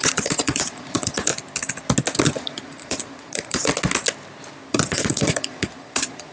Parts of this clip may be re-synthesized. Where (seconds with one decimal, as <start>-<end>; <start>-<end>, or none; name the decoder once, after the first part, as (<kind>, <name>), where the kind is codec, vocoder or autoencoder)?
0.0-1.3 (vocoder, Vocos); 2.2-3.7; 4.7-6.3